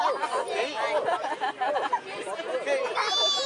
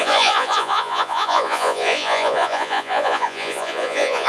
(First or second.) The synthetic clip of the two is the second